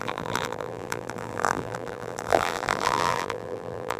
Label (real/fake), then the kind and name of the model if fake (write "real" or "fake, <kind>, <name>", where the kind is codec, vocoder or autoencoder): fake, vocoder, BigVGAN v2